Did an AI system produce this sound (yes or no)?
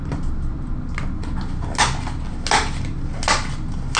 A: no